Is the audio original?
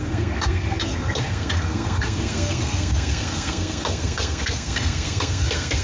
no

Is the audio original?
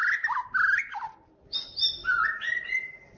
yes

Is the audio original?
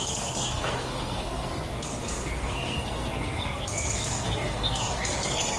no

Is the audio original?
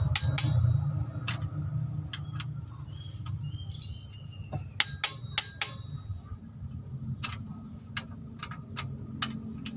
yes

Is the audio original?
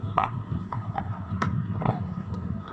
no